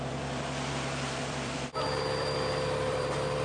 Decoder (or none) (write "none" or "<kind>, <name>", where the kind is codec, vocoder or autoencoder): vocoder, BigVGAN v2